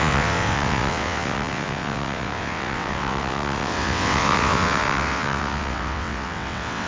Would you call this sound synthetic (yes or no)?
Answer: yes